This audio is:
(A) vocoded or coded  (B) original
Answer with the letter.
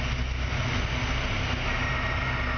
B